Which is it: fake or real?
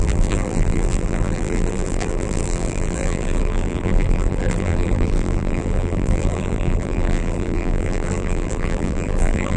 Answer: fake